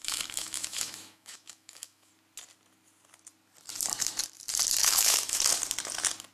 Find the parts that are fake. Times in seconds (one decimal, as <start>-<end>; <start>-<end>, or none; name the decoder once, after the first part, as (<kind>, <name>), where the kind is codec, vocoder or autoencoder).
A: 0.0-2.1 (autoencoder, DAC-VAE); 4.8-5.4